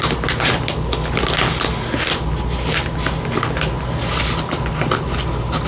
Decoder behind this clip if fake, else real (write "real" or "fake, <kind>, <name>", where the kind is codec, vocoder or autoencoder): real